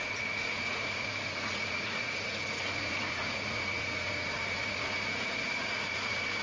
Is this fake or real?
fake